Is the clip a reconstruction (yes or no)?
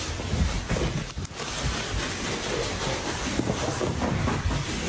no